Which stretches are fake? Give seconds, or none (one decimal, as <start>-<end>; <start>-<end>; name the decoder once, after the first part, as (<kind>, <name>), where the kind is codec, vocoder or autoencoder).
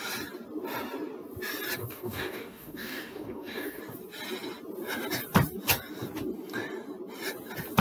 1.8-3.8 (codec, DAC)